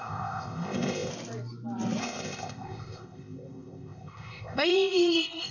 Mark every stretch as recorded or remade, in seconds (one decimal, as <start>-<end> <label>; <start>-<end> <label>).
0.0-1.1 remade; 1.1-2.0 recorded; 2.0-5.5 remade